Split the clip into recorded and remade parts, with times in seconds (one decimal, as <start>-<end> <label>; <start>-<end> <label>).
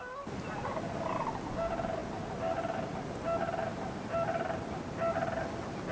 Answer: 0.0-5.9 recorded